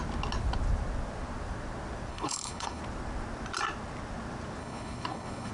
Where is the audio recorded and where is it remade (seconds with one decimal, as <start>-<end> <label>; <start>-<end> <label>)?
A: 0.0-2.1 recorded; 2.1-2.8 remade; 2.8-4.6 recorded; 4.6-5.5 remade